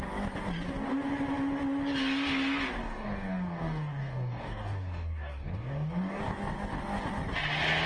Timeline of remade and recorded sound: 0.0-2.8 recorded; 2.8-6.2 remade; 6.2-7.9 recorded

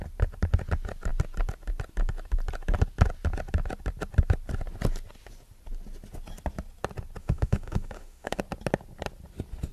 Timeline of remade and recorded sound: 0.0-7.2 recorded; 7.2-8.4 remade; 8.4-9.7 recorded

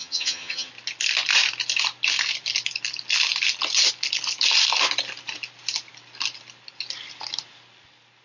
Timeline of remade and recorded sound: 0.0-0.7 remade; 0.7-8.2 recorded